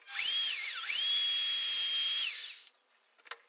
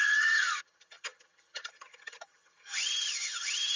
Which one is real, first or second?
first